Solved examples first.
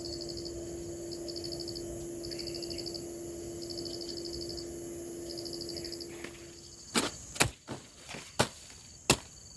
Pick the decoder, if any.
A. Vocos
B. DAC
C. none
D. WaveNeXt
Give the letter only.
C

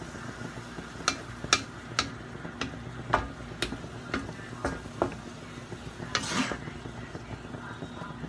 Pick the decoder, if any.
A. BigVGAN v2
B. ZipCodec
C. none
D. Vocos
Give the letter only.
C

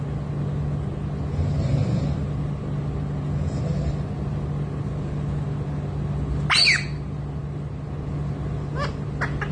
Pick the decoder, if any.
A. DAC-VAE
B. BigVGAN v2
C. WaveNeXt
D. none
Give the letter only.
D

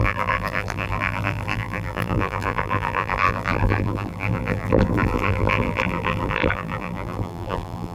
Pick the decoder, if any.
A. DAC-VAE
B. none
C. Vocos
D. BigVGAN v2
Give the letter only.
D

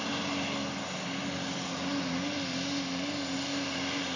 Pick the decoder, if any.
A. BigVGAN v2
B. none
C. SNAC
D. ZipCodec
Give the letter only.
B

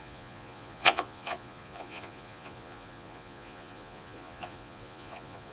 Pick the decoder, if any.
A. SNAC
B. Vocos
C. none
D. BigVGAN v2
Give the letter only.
B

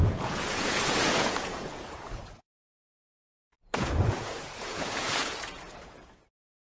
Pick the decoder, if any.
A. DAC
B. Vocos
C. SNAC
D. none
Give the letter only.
B